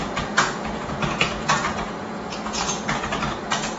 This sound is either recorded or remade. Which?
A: remade